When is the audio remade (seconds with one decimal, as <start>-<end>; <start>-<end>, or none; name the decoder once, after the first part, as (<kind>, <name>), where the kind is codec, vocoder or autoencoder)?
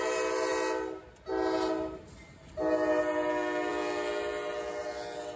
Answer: none